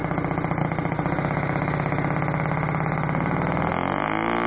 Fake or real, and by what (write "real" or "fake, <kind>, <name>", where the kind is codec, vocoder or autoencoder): real